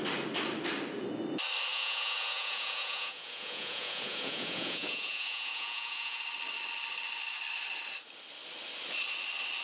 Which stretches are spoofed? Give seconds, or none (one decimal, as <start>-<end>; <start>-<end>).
1.7-6.2